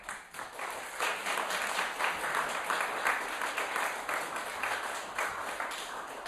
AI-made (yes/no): no